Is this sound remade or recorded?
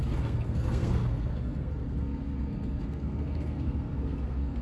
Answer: remade